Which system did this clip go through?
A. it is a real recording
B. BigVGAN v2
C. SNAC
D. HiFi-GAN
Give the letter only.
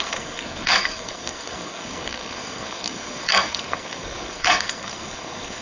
C